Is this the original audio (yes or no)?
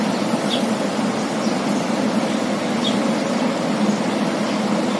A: yes